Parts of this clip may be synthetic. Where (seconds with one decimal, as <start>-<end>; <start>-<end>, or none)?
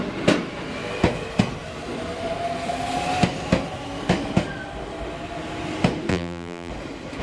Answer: 6.1-6.7